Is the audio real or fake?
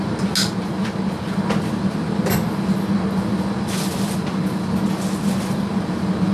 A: real